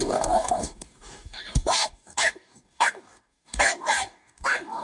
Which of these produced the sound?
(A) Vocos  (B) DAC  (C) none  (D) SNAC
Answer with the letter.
B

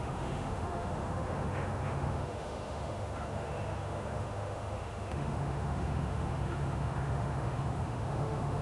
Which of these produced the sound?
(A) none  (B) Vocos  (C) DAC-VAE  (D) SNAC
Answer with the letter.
C